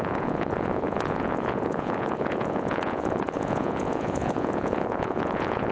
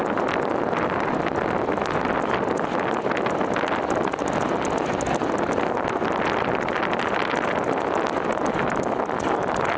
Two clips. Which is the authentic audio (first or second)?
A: second